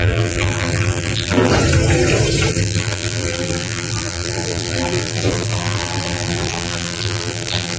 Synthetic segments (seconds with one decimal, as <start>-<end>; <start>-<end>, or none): 0.0-1.5; 2.5-7.8